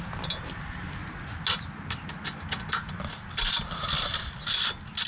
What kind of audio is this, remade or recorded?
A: recorded